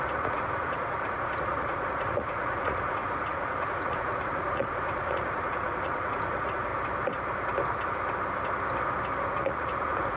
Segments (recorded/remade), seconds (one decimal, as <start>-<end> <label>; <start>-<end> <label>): 0.0-6.7 remade; 6.7-9.2 recorded; 9.2-10.2 remade